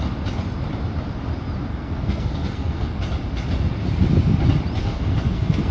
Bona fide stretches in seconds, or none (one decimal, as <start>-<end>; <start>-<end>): 0.0-1.7; 3.0-4.8